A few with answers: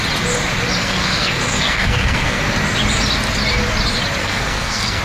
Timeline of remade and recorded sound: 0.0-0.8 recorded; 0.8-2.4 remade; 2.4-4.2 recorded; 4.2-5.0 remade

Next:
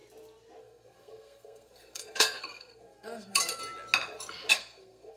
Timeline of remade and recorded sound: 0.0-0.6 recorded; 0.6-3.6 remade; 3.6-4.5 recorded; 4.5-5.2 remade